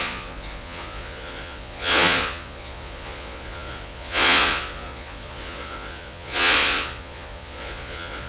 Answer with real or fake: fake